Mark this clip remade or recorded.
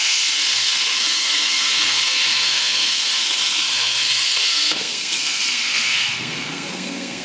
remade